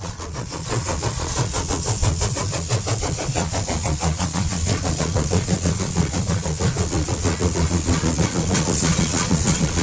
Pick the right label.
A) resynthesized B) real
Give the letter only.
A